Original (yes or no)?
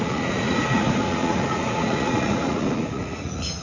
no